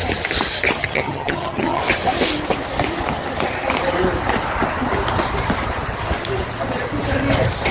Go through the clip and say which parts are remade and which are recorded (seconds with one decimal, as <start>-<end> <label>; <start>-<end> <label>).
0.0-0.8 recorded; 0.8-1.8 remade; 1.8-7.7 recorded